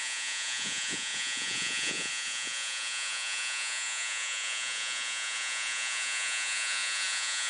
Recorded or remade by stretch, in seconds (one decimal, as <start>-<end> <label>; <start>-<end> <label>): 0.0-7.5 remade